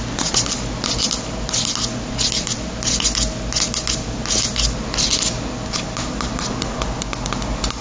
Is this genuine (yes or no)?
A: yes